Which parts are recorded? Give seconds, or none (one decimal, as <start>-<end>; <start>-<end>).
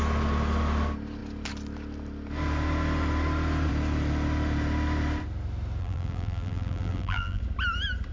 0.0-5.8; 7.4-8.1